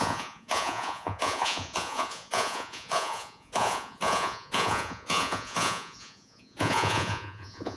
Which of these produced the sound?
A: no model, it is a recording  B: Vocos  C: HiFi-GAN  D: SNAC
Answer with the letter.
B